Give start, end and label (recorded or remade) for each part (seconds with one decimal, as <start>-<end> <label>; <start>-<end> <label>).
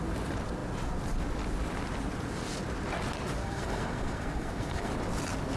0.0-3.4 recorded; 3.4-4.9 remade; 4.9-5.6 recorded